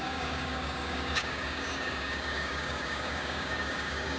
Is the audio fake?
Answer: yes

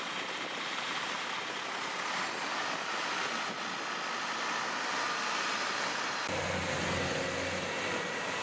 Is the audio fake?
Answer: no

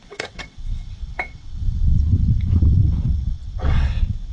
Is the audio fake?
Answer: yes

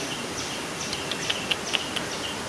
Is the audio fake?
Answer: no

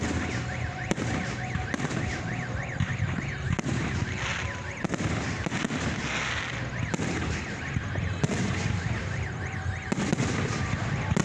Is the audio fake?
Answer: no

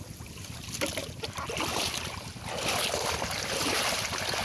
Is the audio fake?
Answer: no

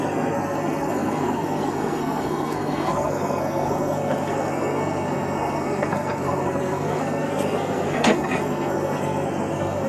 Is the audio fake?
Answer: yes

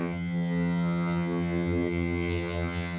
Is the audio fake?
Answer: yes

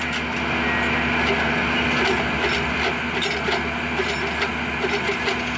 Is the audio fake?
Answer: no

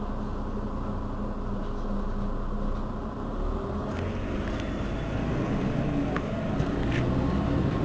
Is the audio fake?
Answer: no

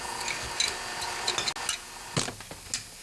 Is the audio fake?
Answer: no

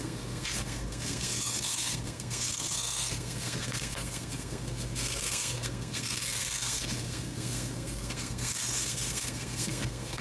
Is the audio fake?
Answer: yes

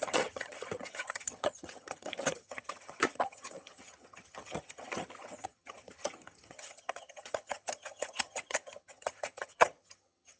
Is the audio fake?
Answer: yes